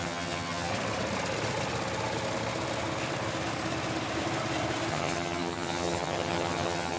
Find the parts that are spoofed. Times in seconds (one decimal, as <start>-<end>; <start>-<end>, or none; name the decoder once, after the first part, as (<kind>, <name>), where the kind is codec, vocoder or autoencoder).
0.0-0.7 (vocoder, HiFi-GAN); 4.9-7.0